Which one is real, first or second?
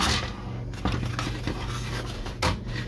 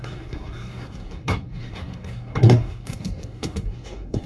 first